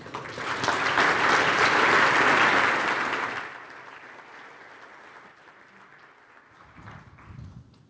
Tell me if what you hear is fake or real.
real